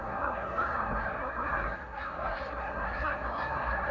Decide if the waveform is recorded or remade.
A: remade